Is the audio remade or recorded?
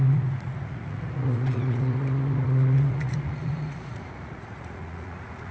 remade